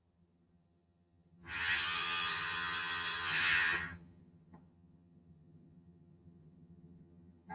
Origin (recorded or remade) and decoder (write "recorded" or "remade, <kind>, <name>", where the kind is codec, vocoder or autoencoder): remade, vocoder, HiFi-GAN